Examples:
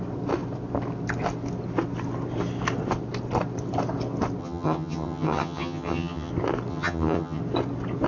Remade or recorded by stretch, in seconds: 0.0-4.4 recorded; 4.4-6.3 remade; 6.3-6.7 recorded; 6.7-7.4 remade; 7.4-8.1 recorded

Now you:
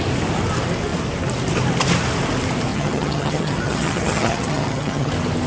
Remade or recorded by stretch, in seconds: 0.0-2.7 recorded; 2.7-5.1 remade; 5.1-5.5 recorded

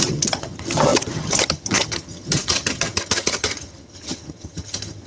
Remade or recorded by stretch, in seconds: 0.0-5.1 remade

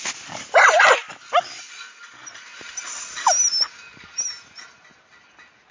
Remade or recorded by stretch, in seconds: 0.0-5.7 recorded

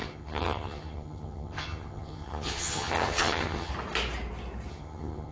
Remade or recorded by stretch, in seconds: 0.0-3.7 remade; 3.7-4.7 recorded; 4.7-5.3 remade

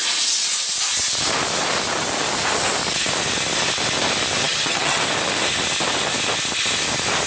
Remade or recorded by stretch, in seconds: 0.0-4.4 recorded; 4.4-5.0 remade; 5.0-7.3 recorded